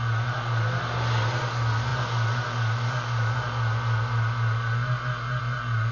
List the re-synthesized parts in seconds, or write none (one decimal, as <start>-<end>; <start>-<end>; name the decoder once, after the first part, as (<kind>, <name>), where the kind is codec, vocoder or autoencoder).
none